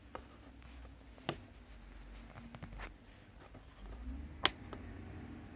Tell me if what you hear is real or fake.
real